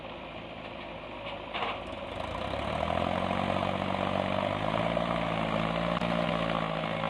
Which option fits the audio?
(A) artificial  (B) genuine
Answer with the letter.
B